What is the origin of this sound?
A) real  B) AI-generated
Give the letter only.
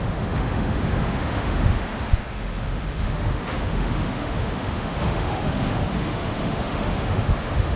B